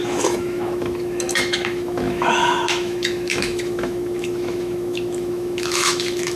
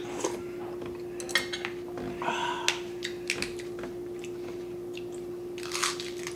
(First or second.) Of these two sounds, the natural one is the second